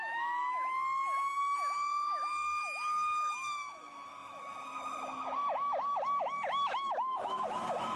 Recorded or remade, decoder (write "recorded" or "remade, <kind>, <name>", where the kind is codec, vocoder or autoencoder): remade, autoencoder, DAC-VAE